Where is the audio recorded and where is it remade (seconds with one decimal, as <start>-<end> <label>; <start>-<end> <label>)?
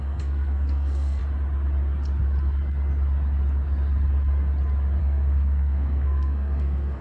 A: 0.0-1.2 remade; 1.2-5.0 recorded; 5.0-7.0 remade